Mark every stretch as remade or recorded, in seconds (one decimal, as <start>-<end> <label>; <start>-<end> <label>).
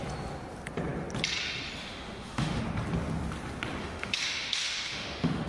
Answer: 0.0-1.8 recorded; 1.8-2.6 remade; 2.6-3.8 recorded; 3.8-5.5 remade